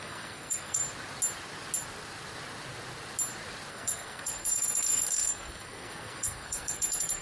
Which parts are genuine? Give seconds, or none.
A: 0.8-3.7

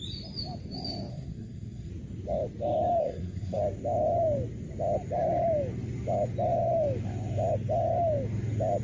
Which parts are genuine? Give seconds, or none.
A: 0.0-1.1; 1.9-3.0; 3.6-8.8